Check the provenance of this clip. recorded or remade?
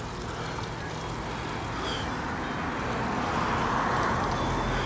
recorded